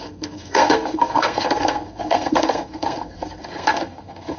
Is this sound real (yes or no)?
no